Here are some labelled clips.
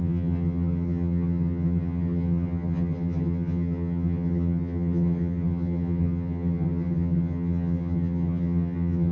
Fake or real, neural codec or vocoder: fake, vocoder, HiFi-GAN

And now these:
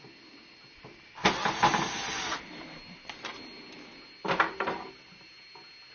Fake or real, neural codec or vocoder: real